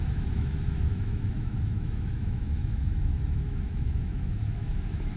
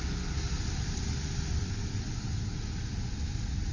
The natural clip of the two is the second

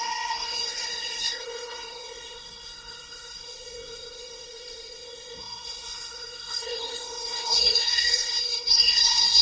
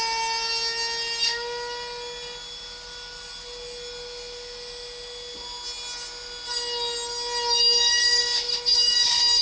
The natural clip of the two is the second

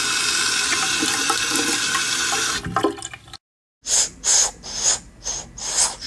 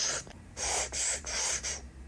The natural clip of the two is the first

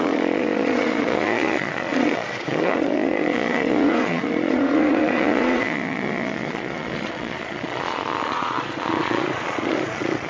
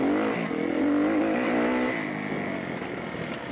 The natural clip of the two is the second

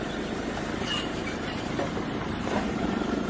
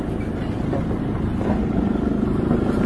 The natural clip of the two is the second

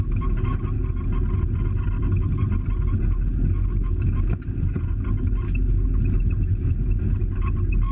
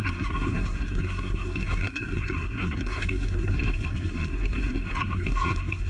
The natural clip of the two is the first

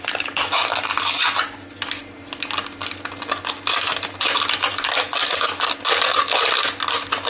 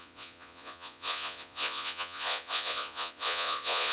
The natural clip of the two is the first